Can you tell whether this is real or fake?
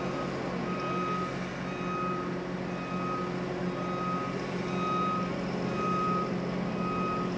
real